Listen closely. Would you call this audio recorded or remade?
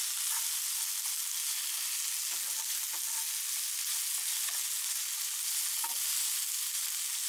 recorded